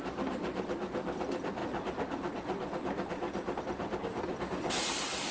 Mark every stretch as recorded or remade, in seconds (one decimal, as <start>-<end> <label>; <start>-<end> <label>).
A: 0.0-5.3 recorded